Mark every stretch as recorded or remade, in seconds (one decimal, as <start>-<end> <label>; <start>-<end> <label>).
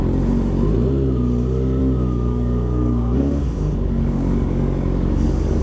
0.0-1.8 recorded; 1.8-5.6 remade